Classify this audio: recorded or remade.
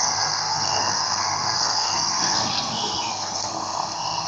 remade